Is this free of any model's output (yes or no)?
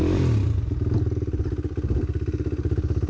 yes